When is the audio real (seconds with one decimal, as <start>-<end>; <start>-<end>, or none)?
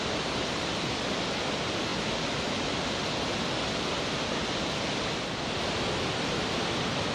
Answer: 0.0-7.1